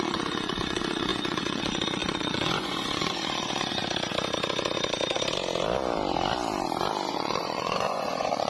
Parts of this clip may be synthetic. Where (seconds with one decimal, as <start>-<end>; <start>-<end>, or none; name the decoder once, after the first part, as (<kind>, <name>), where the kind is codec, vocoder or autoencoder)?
0.0-3.8 (vocoder, Vocos); 7.1-8.5